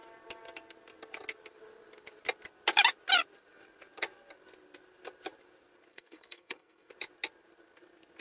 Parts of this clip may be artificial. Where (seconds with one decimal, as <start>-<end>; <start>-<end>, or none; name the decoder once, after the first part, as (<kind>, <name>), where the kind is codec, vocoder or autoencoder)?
5.9-6.9 (codec, SNAC)